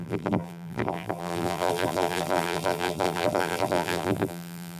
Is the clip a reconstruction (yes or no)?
yes